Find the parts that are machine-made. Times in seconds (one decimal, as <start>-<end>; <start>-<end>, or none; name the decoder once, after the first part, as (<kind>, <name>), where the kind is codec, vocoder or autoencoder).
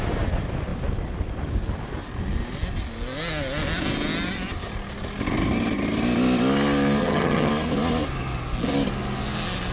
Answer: 7.0-7.5 (vocoder, HiFi-GAN)